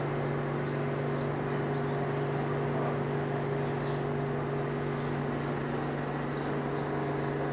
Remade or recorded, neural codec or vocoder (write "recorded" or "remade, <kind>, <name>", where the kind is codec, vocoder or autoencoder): recorded